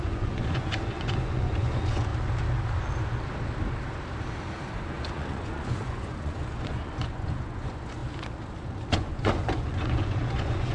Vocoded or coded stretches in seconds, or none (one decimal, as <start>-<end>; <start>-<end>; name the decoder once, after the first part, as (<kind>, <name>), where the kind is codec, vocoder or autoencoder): 0.0-2.1 (vocoder, Vocos); 4.7-8.0; 8.9-10.7